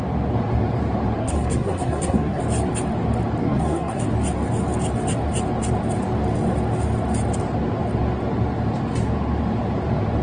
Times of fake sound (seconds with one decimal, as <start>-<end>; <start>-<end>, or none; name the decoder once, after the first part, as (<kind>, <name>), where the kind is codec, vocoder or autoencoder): 1.2-2.4 (codec, SNAC); 3.4-4.0